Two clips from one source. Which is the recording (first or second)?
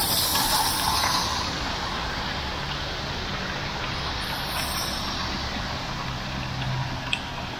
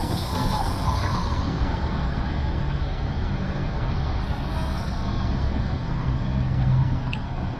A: first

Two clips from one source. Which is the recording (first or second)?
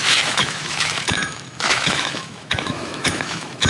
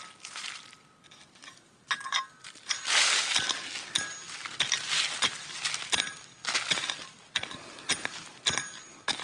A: second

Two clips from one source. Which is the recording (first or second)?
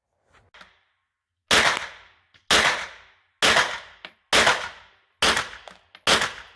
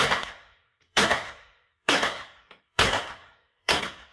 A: first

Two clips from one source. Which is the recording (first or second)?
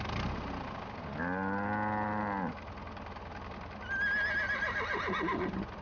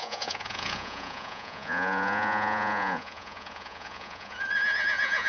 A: first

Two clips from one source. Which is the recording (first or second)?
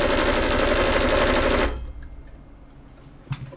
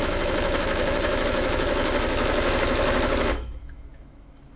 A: first